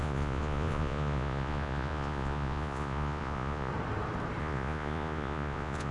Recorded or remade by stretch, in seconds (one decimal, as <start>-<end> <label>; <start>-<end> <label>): 0.0-3.7 remade; 3.7-4.4 recorded; 4.4-5.9 remade